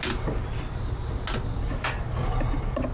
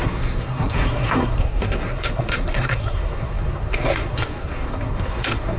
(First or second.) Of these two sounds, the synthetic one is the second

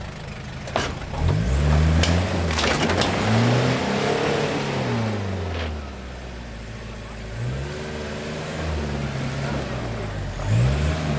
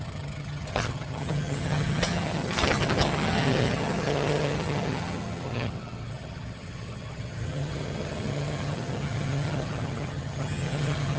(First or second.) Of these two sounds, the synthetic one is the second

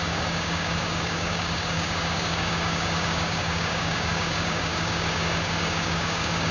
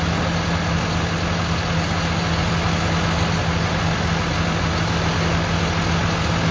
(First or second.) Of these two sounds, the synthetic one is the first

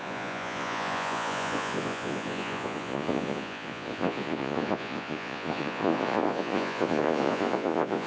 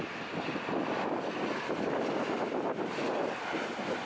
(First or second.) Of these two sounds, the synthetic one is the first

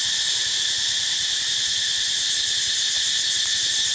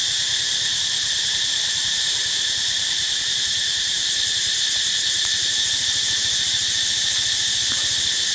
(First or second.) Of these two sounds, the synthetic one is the second